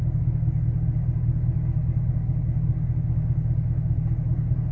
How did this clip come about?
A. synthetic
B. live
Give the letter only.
B